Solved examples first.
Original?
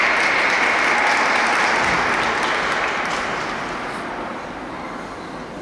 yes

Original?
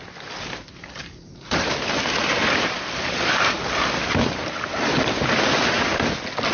yes